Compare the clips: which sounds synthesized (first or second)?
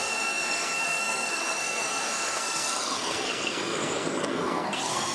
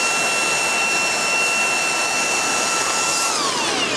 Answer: first